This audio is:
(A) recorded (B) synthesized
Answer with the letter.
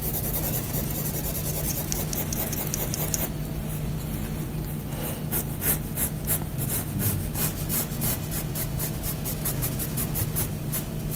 A